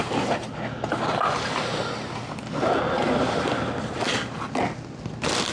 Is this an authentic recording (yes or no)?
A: yes